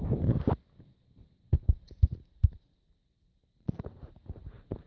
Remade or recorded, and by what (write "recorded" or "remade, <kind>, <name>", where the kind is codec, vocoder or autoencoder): recorded